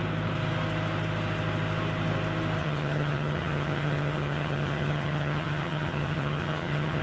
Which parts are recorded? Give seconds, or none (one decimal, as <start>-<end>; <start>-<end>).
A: 0.0-2.6